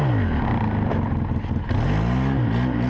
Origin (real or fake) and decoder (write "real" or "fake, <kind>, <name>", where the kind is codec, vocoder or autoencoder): real